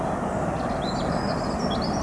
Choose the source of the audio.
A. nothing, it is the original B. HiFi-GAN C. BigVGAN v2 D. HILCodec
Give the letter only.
A